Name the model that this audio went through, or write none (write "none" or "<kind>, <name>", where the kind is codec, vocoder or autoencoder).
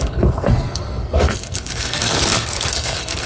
codec, SNAC